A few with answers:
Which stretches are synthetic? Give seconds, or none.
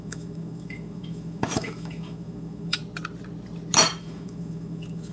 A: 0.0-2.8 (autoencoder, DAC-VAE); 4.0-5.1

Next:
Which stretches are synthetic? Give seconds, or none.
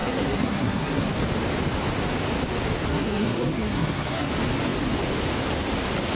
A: 0.0-1.0 (codec, SNAC); 2.9-4.3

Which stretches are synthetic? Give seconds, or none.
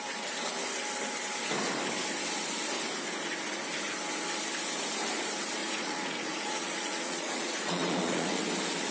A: 5.6-8.4 (vocoder, Vocos)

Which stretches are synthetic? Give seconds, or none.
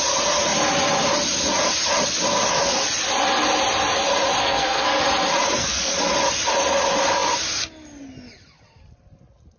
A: 4.4-5.0 (codec, SNAC); 5.6-6.1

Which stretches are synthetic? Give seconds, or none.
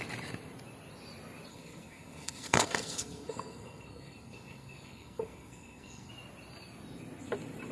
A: 1.5-6.1 (codec, SNAC)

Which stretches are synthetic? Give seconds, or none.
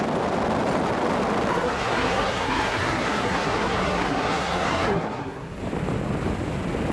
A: 1.5-5.6 (codec, SNAC)